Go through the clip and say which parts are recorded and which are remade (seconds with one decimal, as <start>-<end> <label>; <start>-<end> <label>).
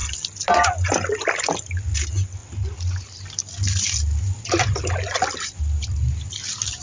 0.0-6.8 recorded